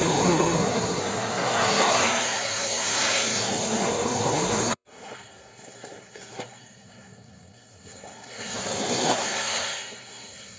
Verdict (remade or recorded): remade